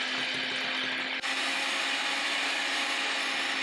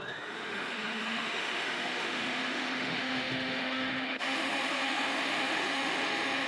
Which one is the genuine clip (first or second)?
first